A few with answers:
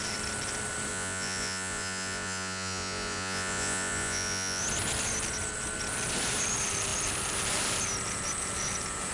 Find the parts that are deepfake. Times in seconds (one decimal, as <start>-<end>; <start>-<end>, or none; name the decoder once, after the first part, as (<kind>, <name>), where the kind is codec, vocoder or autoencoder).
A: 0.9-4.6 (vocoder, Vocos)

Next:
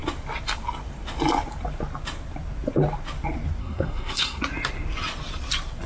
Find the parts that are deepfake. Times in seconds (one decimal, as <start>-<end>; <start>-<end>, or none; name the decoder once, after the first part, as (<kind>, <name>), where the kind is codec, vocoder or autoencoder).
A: 3.6-4.4 (codec, SNAC)

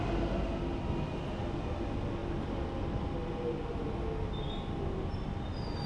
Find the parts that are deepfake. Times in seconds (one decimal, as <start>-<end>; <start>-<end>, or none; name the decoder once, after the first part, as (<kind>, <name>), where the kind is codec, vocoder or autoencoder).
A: none